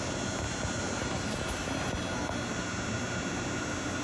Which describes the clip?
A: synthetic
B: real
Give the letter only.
B